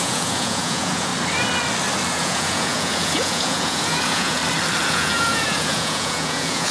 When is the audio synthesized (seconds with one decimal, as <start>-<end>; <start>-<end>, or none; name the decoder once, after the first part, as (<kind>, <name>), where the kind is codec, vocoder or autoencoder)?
0.0-1.1 (vocoder, Vocos); 2.1-4.4; 4.9-6.7